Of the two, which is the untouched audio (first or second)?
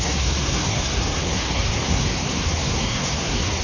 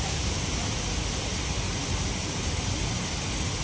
second